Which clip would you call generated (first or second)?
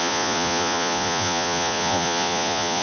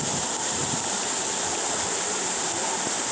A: first